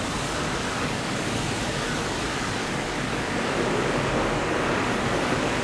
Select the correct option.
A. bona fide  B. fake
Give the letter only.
B